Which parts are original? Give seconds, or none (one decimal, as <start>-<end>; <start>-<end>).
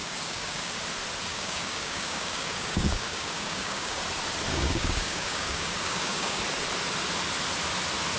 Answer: 0.8-1.3; 4.0-4.5; 6.4-8.2